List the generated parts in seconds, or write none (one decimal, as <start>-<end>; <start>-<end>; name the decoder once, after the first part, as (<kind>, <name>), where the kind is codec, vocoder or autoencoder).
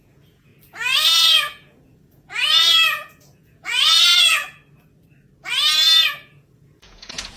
0.0-0.5 (vocoder, Vocos); 1.2-4.6; 6.1-7.4